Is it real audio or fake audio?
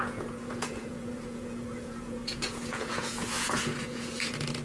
fake